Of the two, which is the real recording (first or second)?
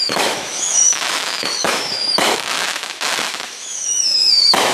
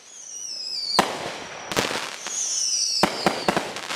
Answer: second